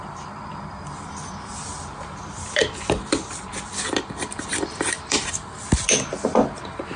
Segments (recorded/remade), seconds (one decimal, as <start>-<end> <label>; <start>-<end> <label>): 0.0-1.5 recorded; 1.5-5.7 remade; 5.7-7.0 recorded